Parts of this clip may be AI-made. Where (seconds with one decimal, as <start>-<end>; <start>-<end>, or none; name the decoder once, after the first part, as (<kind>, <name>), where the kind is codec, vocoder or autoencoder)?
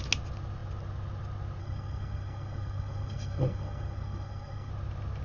1.6-4.7 (codec, SNAC)